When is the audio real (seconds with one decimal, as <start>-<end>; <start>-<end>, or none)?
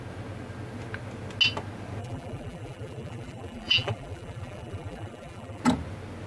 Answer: 0.0-2.0; 5.6-6.3